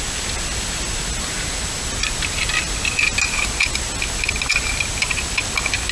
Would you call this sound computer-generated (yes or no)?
no